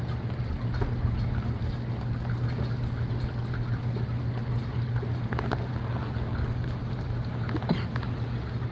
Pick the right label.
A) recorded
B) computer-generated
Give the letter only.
A